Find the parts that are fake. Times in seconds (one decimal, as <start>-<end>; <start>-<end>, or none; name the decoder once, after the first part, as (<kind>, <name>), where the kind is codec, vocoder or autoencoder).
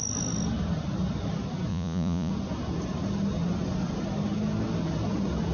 1.7-2.3 (vocoder, Vocos)